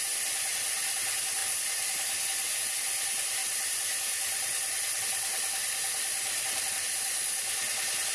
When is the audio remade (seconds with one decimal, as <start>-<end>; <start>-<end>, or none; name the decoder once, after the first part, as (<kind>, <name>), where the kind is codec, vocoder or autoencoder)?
none